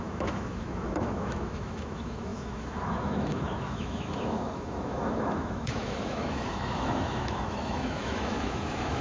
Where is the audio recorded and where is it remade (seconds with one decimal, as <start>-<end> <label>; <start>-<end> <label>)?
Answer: 0.0-9.0 remade